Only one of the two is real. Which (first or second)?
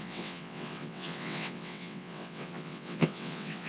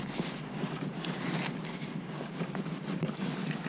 second